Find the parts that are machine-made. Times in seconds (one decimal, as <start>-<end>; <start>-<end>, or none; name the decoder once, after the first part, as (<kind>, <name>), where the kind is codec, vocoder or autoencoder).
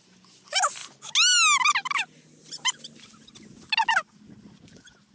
none